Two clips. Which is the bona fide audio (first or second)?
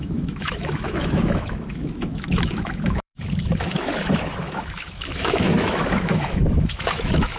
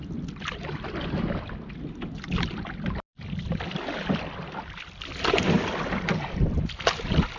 second